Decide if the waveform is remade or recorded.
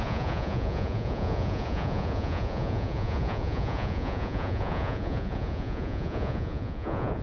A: remade